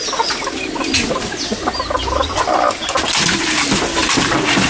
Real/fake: real